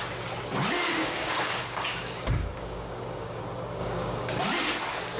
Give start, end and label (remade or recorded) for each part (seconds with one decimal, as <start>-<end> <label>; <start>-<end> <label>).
0.0-1.0 recorded; 1.0-3.4 remade; 3.4-3.8 recorded; 3.8-4.4 remade; 4.4-5.2 recorded